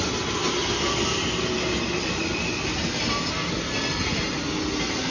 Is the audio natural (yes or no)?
yes